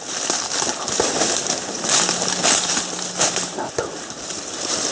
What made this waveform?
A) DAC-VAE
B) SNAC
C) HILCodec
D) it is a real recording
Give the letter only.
D